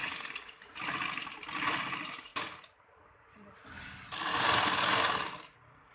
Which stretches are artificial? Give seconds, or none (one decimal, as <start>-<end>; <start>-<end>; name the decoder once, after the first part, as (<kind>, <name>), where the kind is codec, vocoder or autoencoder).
0.0-0.6 (codec, DAC); 4.3-5.0